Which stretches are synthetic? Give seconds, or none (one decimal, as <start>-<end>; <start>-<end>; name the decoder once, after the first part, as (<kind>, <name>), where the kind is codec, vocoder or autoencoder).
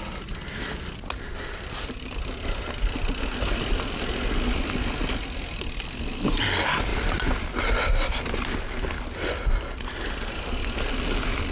none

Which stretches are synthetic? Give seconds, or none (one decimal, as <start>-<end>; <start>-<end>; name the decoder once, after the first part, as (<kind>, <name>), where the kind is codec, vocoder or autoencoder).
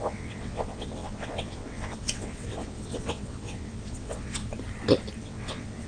0.0-4.4 (vocoder, WaveNeXt); 5.2-5.9